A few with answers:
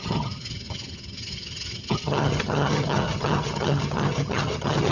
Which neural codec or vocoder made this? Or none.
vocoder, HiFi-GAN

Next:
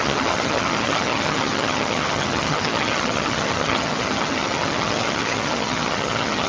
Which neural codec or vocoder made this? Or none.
vocoder, HiFi-GAN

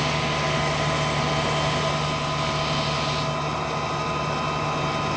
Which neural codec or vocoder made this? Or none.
none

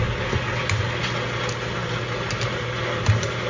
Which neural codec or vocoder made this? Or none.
none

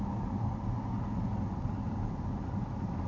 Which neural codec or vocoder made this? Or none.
none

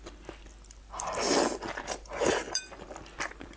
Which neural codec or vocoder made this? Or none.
none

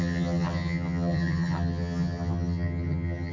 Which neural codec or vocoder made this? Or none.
vocoder, HiFi-GAN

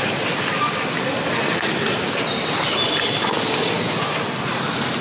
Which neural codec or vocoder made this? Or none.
none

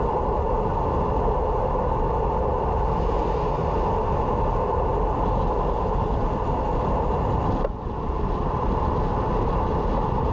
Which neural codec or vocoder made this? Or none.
none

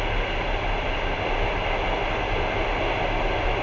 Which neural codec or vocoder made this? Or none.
none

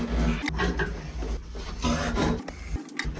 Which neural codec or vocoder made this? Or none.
none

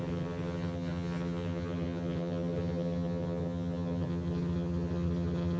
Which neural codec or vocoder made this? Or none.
vocoder, HiFi-GAN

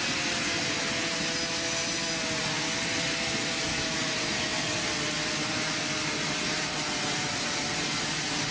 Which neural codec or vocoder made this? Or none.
none